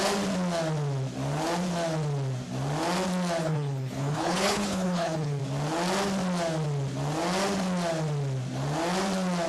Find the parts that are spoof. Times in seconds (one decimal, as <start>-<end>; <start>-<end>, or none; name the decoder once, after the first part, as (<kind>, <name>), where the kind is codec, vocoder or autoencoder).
3.4-5.4 (codec, HILCodec)

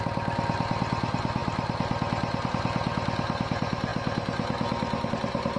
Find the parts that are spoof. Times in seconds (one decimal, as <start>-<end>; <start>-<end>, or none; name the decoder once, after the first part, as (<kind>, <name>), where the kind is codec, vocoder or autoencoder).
none

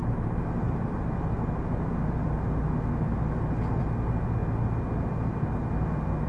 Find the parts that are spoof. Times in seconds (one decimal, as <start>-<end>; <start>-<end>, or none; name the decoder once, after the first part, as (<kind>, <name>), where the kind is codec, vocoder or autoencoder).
none

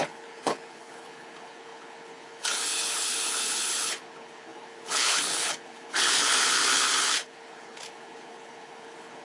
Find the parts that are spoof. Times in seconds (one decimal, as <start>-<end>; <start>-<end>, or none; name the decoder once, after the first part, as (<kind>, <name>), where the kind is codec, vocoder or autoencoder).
0.0-9.2 (codec, HILCodec)

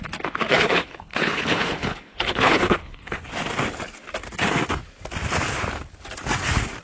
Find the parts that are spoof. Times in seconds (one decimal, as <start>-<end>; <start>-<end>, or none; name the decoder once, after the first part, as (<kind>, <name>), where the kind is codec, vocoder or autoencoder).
0.5-3.3 (codec, HILCodec)

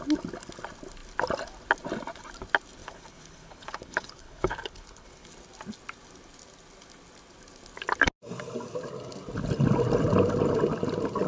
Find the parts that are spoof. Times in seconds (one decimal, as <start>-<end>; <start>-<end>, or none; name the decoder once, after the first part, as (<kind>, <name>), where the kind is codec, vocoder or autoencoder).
2.8-5.3 (codec, HILCodec)

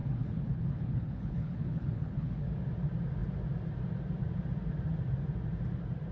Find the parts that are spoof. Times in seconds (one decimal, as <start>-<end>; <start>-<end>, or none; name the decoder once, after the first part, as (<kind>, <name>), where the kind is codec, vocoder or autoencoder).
0.0-2.5 (codec, HILCodec)